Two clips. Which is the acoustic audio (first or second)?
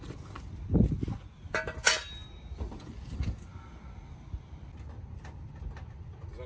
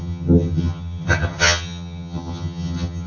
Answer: first